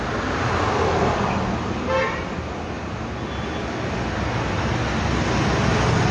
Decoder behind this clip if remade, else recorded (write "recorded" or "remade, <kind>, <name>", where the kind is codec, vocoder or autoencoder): recorded